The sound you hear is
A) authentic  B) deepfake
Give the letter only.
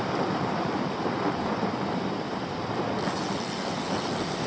B